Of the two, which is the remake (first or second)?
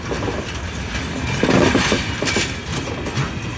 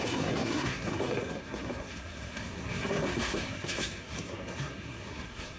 second